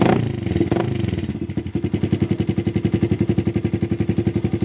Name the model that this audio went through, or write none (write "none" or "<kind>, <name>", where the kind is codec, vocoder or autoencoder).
none